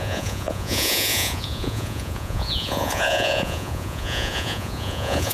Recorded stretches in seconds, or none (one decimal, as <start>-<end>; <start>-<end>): none